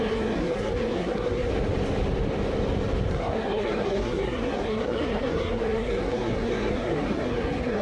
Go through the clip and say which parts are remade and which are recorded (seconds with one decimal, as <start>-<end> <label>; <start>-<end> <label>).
0.0-1.5 remade; 1.5-3.1 recorded; 3.1-7.8 remade